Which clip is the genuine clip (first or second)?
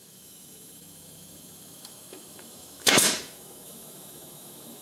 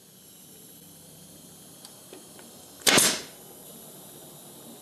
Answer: second